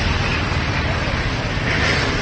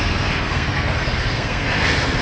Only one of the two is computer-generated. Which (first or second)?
second